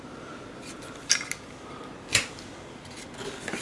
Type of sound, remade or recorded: recorded